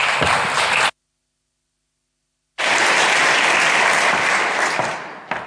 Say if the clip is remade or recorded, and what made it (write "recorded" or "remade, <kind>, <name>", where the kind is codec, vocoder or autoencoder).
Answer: recorded